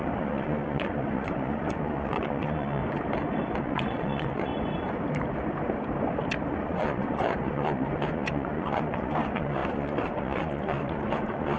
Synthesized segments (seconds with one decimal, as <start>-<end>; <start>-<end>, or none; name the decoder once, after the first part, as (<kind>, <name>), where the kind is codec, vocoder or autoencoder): 0.0-2.8 (vocoder, Vocos); 3.6-4.5; 6.5-11.6